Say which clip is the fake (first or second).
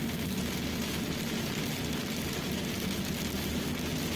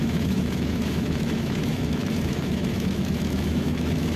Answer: second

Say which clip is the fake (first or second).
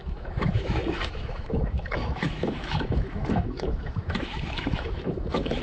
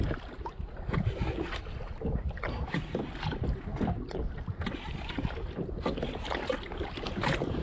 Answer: first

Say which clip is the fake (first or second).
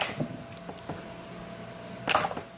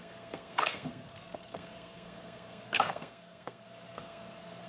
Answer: second